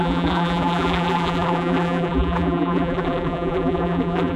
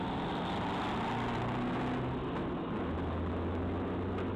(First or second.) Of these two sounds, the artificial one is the first